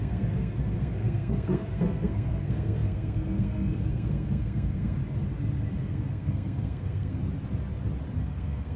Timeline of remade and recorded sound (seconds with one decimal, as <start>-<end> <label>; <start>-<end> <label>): 0.0-5.0 remade; 5.0-5.8 recorded; 5.8-7.2 remade; 7.2-8.2 recorded; 8.2-8.8 remade